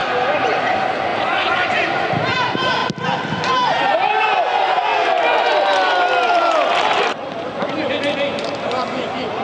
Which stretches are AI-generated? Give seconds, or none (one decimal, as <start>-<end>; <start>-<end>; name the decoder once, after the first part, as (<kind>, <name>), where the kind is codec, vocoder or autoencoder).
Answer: 1.1-2.0 (vocoder, BigVGAN v2)